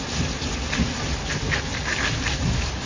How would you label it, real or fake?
real